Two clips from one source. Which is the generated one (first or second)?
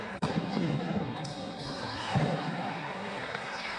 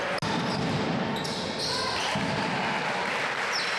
first